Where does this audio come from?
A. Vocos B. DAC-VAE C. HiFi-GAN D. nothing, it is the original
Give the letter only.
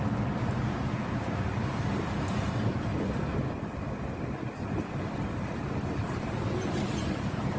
D